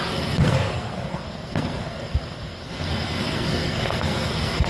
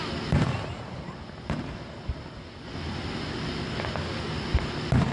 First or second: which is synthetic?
first